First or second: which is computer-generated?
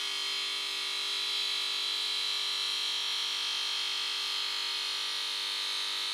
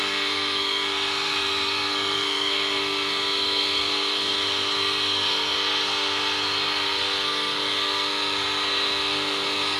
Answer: second